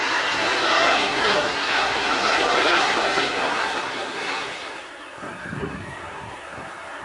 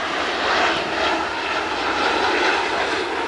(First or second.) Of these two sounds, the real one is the second